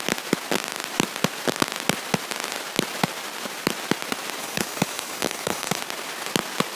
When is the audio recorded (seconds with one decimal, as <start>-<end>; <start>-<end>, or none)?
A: 0.0-4.4; 5.8-6.8